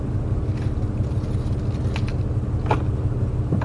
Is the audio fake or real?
real